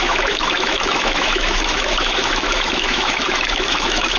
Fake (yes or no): yes